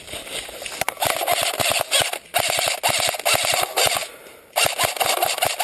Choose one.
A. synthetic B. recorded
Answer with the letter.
B